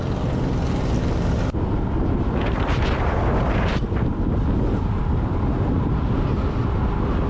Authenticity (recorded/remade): recorded